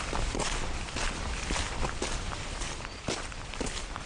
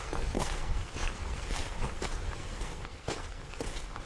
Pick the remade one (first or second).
second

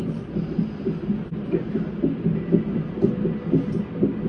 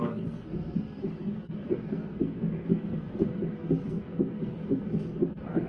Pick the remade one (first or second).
second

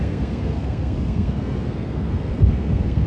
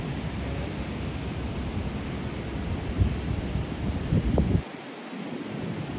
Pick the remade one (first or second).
first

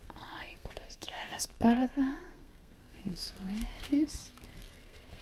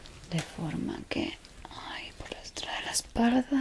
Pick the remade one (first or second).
first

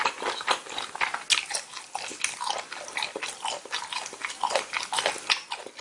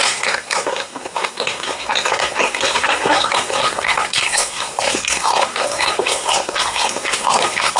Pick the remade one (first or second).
second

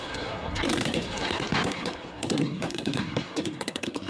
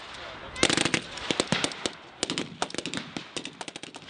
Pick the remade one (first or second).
first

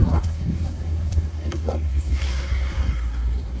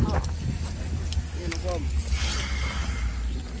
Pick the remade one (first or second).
first